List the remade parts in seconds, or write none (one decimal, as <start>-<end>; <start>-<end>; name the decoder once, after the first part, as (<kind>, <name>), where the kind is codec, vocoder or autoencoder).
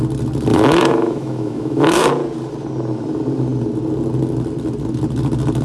0.5-2.1 (autoencoder, DAC-VAE)